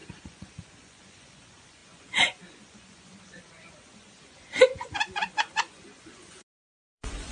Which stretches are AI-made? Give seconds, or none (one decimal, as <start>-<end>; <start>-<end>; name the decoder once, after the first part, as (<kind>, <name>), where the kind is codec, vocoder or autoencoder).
0.0-7.3 (vocoder, Vocos)